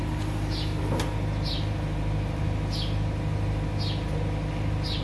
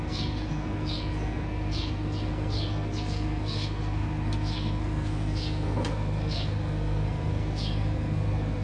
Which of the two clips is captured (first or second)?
first